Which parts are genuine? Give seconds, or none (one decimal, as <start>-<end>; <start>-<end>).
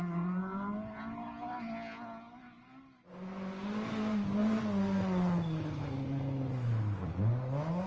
0.0-7.9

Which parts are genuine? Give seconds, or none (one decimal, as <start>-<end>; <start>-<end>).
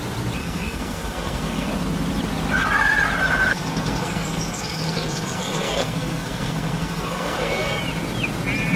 0.0-0.4; 1.7-3.5; 7.8-8.8